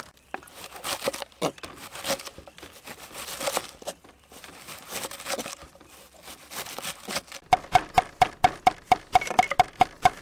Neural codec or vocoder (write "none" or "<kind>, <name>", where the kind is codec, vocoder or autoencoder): none